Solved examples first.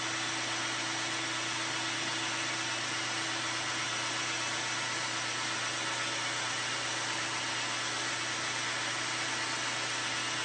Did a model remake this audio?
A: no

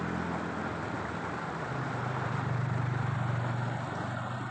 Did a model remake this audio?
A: no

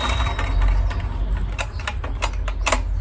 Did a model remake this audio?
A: no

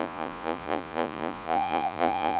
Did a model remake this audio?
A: yes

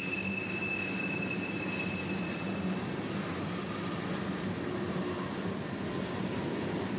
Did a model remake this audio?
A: no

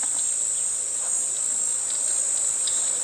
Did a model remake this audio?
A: no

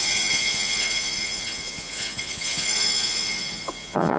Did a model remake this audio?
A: yes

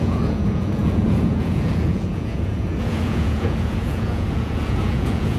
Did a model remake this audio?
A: yes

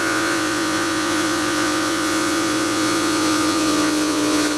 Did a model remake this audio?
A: yes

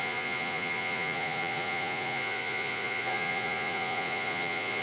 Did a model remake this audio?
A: yes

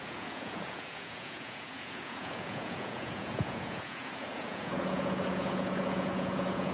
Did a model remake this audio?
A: yes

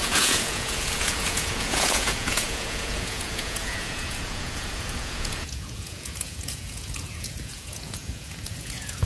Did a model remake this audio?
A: yes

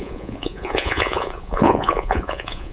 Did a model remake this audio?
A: yes